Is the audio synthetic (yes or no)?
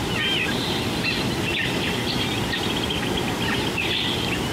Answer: no